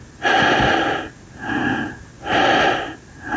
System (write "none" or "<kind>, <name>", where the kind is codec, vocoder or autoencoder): none